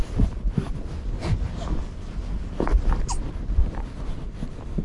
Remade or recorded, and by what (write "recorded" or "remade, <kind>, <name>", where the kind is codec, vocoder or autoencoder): recorded